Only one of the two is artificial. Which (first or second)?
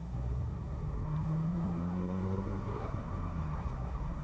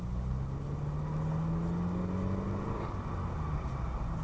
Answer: first